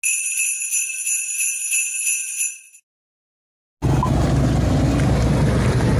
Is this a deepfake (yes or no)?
no